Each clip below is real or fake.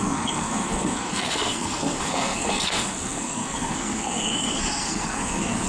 fake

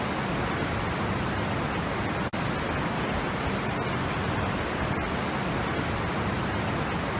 real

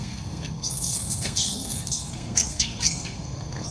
fake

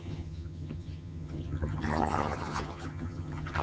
fake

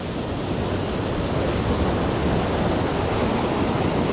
real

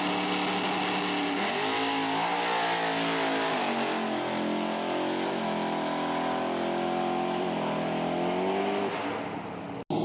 real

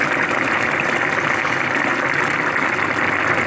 real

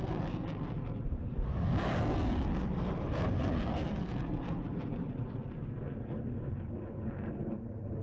real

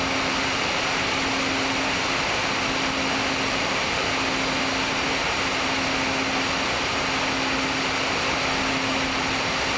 real